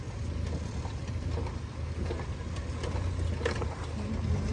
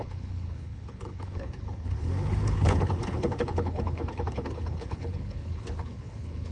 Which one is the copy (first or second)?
second